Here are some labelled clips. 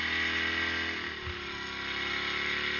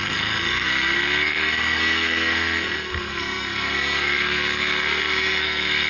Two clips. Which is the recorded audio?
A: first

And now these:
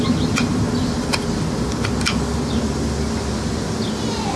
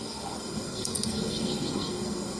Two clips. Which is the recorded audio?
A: first